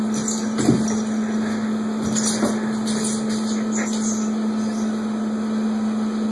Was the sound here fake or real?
real